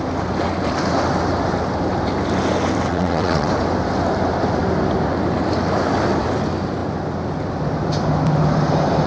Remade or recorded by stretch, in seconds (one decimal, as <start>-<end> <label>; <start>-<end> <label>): 0.0-2.9 recorded; 2.9-3.5 remade; 3.5-9.1 recorded